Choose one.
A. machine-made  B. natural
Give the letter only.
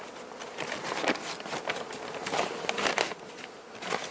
B